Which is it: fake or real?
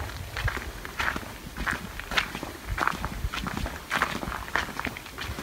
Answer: real